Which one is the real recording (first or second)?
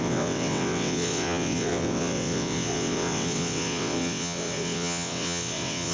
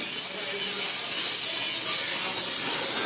second